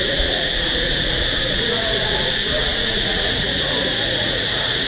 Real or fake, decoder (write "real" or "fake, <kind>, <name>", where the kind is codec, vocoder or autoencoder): fake, vocoder, Vocos